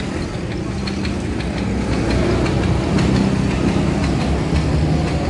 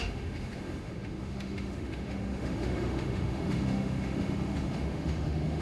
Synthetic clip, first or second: second